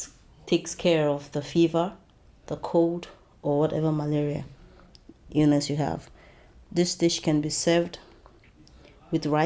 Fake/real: real